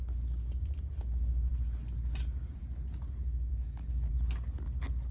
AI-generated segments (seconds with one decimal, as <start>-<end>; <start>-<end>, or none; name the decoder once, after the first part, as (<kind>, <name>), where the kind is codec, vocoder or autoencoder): none